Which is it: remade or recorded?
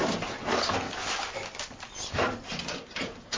recorded